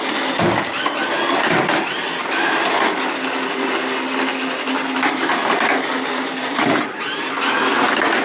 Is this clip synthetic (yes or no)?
no